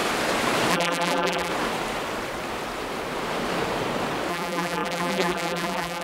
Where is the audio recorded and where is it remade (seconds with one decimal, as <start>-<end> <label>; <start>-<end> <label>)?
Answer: 0.0-0.7 recorded; 0.7-1.5 remade; 1.5-4.3 recorded; 4.3-6.0 remade